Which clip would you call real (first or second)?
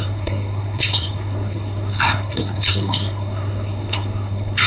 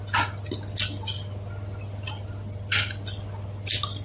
second